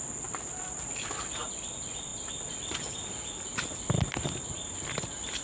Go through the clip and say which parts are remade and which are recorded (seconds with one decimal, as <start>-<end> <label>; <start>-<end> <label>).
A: 0.0-5.4 recorded